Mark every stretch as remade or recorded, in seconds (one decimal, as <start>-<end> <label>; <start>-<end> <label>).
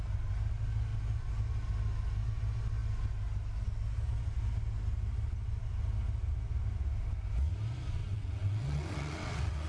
0.0-8.0 recorded; 8.0-9.7 remade